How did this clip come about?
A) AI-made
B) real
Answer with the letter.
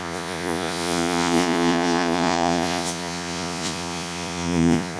A